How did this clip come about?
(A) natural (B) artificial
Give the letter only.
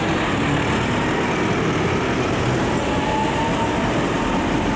A